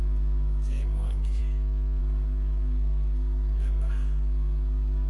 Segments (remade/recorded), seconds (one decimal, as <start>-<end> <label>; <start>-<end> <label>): 0.0-1.4 remade; 1.4-2.0 recorded; 2.0-5.1 remade